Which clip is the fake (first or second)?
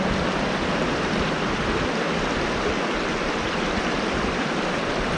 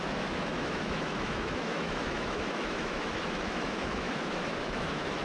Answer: second